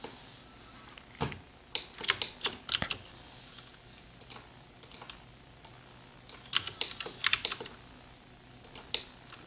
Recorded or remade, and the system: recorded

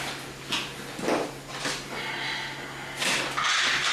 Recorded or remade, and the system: recorded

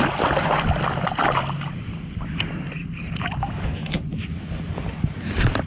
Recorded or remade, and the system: recorded